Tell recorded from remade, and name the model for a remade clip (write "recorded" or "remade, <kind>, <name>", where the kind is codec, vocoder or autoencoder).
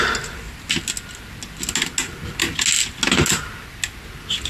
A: recorded